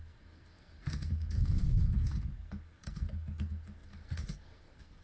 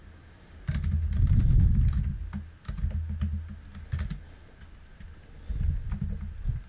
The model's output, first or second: first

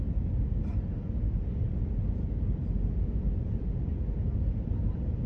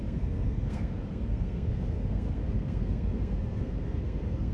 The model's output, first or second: second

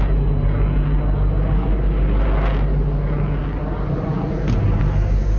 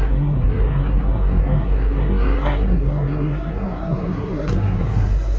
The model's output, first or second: second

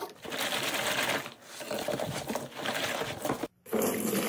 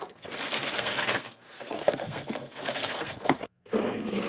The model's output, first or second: second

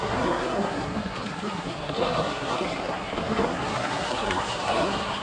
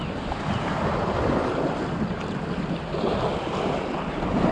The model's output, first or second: first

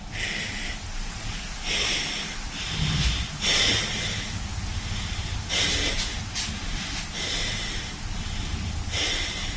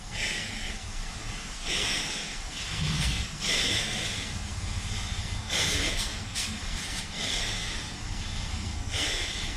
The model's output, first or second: second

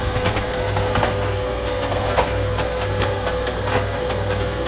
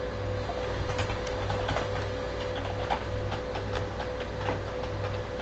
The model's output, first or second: first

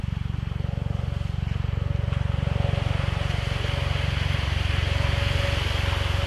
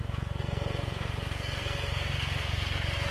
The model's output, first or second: second